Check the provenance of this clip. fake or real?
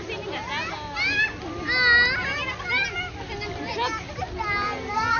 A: real